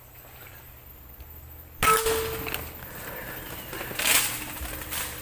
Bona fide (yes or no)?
yes